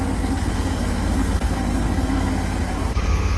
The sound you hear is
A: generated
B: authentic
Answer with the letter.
A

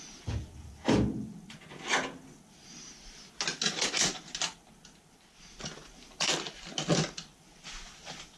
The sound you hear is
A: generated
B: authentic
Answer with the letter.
B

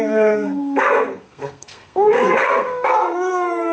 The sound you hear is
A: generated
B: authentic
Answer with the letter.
A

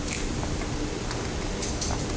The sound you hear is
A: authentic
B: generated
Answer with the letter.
A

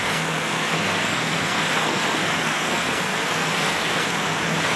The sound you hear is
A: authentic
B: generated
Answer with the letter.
B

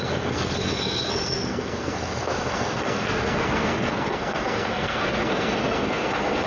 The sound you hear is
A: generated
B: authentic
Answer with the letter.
A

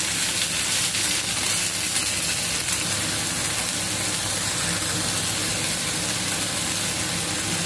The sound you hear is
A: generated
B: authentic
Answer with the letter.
B